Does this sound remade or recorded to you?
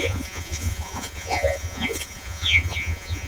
remade